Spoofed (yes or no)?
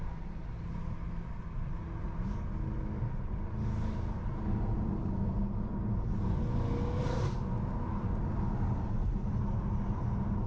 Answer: no